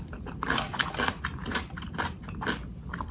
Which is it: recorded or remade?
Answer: recorded